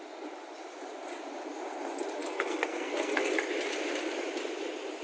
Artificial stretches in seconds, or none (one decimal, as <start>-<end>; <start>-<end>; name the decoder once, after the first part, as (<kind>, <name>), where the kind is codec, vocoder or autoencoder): 2.2-3.3 (codec, SNAC)